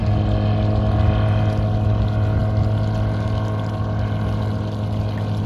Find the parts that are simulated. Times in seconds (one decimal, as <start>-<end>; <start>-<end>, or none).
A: none